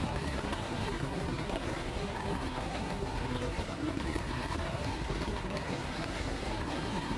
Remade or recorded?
remade